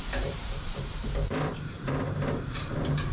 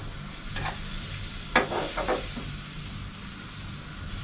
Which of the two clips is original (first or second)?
second